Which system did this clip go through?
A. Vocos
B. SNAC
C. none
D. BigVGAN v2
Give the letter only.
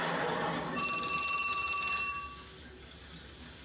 C